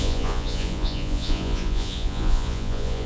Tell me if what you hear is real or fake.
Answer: fake